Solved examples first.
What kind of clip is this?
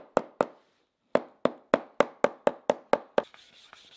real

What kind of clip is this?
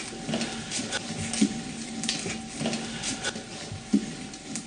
real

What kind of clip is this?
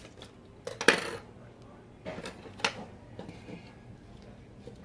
real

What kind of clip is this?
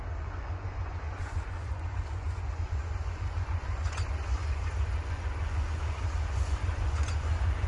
fake